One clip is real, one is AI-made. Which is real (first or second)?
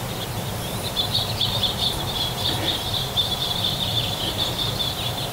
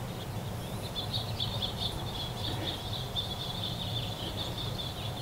second